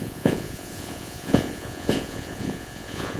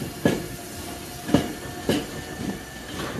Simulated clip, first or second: first